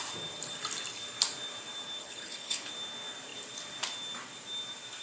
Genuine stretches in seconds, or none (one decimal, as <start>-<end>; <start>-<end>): 0.0-2.0; 2.7-5.0